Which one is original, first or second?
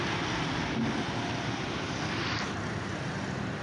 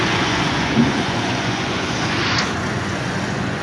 first